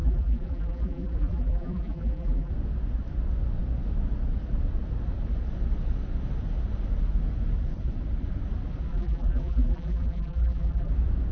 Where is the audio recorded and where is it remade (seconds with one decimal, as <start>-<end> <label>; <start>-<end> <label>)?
0.0-2.5 remade; 2.5-8.9 recorded; 8.9-10.9 remade; 10.9-11.3 recorded